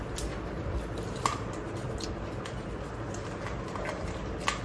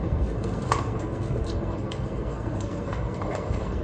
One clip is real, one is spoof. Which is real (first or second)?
first